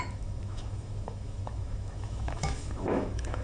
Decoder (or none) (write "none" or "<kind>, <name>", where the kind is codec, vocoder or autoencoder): autoencoder, DAC-VAE